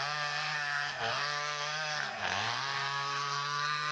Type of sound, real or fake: fake